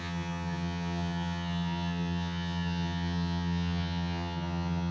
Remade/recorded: remade